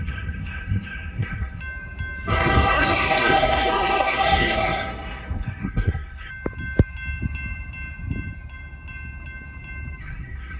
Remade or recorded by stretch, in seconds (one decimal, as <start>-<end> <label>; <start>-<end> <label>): 0.0-1.6 remade; 1.6-2.3 recorded; 2.3-6.3 remade; 6.3-10.0 recorded; 10.0-10.6 remade